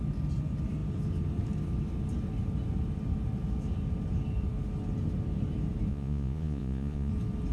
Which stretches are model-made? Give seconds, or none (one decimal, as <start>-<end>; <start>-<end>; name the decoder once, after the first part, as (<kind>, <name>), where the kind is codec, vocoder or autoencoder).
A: 5.9-7.1 (vocoder, Vocos)